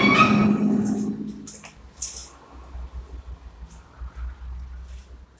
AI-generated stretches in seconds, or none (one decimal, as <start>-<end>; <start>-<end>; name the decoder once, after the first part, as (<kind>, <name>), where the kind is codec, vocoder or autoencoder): none